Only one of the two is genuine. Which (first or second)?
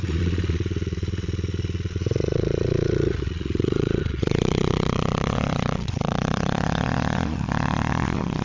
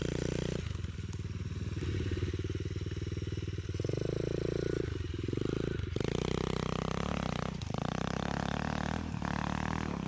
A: second